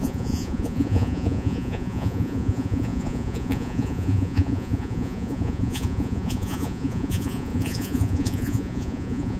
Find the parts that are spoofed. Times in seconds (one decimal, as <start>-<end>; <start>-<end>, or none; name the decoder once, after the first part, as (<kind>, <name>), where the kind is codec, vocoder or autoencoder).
0.0-9.4 (vocoder, Vocos)